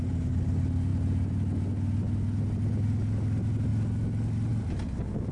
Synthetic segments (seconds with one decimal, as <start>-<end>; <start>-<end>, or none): none

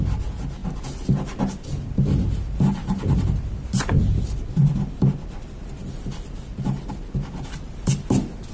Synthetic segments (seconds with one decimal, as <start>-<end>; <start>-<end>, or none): none

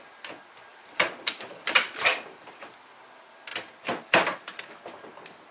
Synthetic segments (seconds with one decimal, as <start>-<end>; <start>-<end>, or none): 0.7-2.5; 3.5-4.6

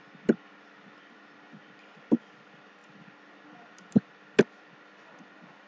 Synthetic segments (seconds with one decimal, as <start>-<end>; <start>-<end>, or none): none

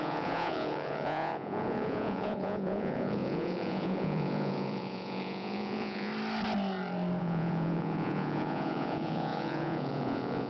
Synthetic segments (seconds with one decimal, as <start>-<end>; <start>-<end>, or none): 0.0-6.1; 7.2-10.5

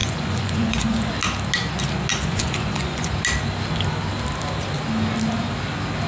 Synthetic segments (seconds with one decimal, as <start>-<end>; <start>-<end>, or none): 0.0-1.1; 2.1-3.1

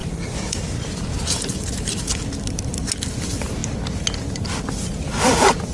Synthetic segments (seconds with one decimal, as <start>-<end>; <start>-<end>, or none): 0.0-2.2

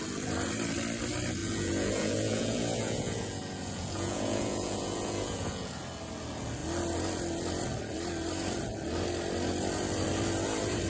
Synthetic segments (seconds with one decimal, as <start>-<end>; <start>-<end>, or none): 1.4-5.7